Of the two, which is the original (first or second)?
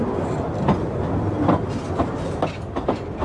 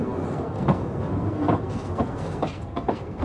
first